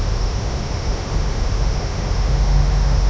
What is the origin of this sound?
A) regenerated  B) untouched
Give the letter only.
A